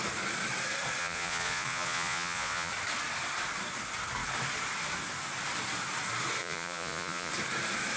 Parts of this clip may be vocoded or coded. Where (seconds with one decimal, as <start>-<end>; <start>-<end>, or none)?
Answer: 1.0-2.7; 6.4-7.3